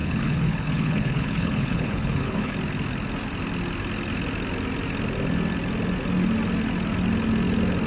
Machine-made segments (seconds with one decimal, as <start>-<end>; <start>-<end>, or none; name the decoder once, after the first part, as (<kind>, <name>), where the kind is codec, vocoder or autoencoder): 0.0-2.5 (codec, HILCodec)